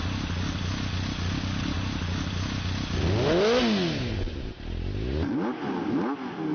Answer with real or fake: real